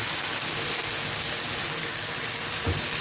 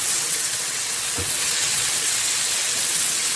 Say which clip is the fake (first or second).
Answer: second